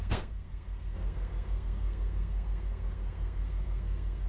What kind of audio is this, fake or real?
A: fake